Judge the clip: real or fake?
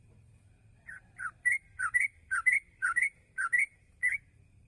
fake